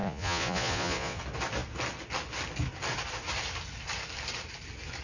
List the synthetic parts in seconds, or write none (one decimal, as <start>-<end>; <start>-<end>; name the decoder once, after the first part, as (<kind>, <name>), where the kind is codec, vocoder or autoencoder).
0.0-1.2 (vocoder, Vocos)

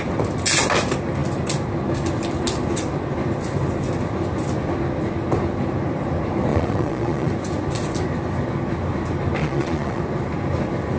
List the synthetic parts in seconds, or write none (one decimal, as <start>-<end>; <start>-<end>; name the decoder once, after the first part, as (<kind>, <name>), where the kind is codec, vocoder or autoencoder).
6.5-7.3 (vocoder, Vocos); 9.4-10.0

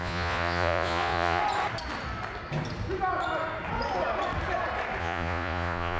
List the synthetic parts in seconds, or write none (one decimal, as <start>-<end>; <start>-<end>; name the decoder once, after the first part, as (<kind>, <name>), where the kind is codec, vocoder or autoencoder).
0.0-1.4 (vocoder, Vocos); 5.0-6.0

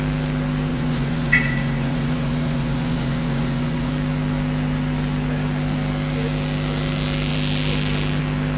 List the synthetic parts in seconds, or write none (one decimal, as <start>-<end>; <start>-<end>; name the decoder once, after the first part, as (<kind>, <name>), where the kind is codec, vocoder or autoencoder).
0.7-3.9 (vocoder, Vocos)

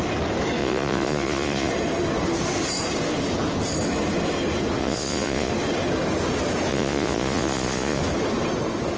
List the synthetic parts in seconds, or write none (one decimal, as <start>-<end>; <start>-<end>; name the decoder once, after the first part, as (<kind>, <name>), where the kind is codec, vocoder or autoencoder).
0.6-1.7 (vocoder, Vocos); 4.8-5.5; 6.7-8.0

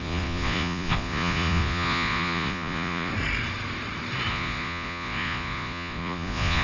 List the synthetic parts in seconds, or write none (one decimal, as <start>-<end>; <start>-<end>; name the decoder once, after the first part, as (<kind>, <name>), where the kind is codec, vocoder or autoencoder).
0.0-3.1 (vocoder, Vocos); 4.3-6.6

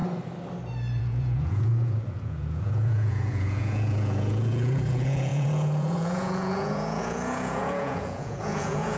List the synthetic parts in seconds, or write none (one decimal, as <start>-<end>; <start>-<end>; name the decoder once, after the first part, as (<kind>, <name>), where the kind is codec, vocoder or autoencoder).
1.0-9.0 (vocoder, Vocos)